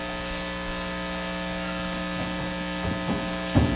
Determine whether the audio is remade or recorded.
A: recorded